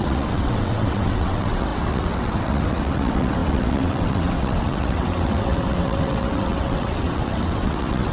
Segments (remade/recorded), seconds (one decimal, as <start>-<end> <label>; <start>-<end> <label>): 0.0-8.1 remade